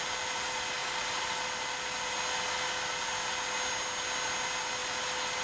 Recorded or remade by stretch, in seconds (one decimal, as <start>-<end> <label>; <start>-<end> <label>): 0.0-5.4 recorded

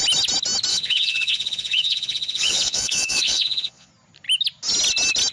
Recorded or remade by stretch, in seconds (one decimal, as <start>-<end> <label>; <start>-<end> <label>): 0.0-0.7 recorded; 0.7-3.9 remade; 3.9-5.3 recorded